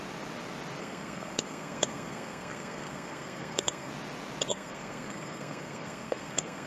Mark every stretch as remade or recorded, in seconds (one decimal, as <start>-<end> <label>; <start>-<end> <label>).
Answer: 0.0-0.8 recorded; 0.8-3.9 remade; 3.9-4.5 recorded; 4.5-6.7 remade